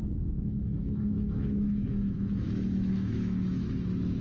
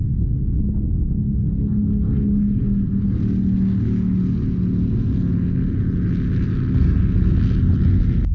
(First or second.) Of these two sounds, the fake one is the first